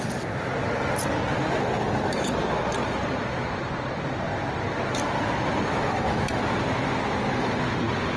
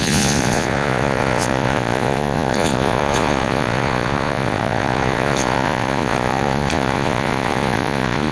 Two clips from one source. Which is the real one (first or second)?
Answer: first